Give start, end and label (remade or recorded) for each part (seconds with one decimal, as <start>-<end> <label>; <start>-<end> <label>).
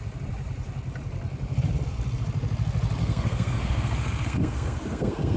0.0-3.0 recorded; 3.0-5.4 remade